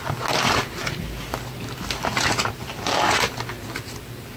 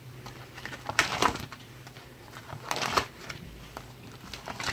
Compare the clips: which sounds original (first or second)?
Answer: first